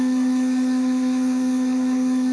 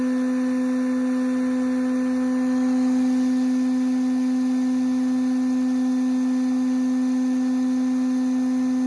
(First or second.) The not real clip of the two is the first